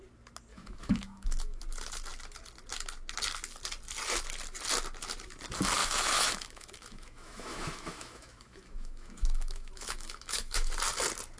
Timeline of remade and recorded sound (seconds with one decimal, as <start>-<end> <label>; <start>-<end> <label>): 0.0-0.5 recorded; 0.5-1.6 remade; 1.6-5.8 recorded; 5.8-10.7 remade; 10.7-11.4 recorded